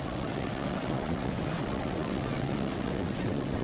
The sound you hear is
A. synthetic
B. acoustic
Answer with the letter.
A